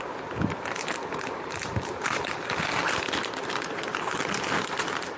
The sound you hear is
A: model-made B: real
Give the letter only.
A